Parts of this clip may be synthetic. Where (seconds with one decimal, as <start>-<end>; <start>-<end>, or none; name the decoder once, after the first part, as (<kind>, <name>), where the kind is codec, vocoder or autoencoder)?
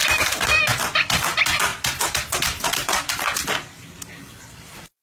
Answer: 0.0-0.6 (vocoder, BigVGAN v2); 1.7-3.1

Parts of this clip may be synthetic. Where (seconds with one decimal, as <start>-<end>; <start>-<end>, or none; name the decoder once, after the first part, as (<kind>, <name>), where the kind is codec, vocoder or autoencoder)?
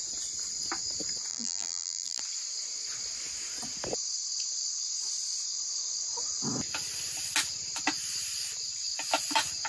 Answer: 1.3-2.2 (vocoder, BigVGAN v2)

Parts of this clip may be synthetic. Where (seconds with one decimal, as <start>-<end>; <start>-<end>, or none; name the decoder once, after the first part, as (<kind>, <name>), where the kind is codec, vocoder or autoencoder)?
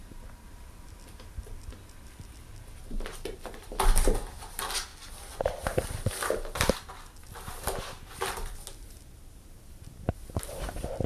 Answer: none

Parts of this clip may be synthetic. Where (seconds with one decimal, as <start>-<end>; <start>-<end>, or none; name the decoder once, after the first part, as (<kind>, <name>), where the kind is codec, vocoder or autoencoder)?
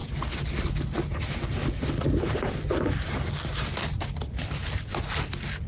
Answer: 0.0-1.2 (vocoder, BigVGAN v2); 1.6-5.0